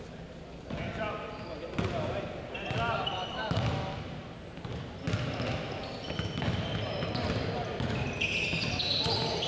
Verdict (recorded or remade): recorded